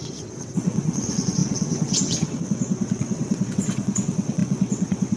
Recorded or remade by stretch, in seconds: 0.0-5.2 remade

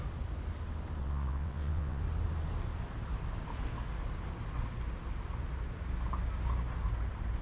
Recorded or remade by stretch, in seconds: 0.0-1.0 recorded; 1.0-2.0 remade; 2.0-7.4 recorded

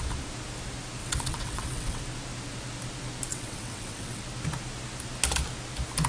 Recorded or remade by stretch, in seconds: 0.0-1.0 recorded; 1.0-2.0 remade; 2.0-3.3 recorded; 3.3-4.2 remade; 4.2-6.1 recorded

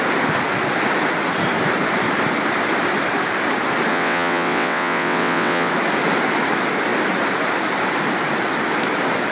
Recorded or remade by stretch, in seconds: 0.0-3.9 recorded; 3.9-5.7 remade; 5.7-9.3 recorded